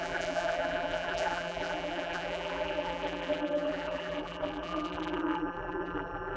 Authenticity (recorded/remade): remade